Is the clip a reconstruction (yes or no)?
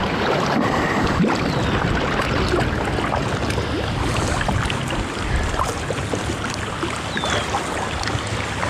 no